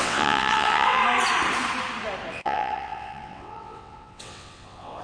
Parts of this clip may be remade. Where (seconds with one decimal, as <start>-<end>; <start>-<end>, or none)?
0.0-1.0; 2.3-5.0